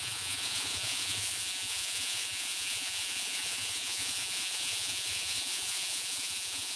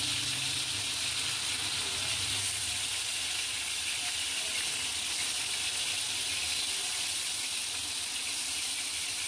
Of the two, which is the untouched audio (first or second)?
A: second